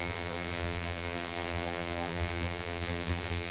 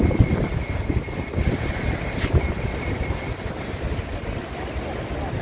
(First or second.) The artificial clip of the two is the first